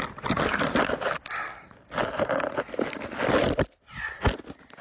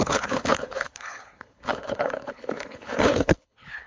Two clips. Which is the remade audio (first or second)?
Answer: second